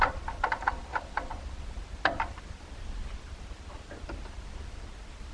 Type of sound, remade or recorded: recorded